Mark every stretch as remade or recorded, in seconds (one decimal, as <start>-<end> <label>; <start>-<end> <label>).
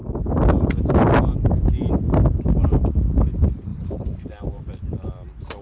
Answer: 0.0-5.6 recorded